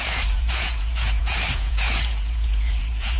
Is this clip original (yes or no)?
no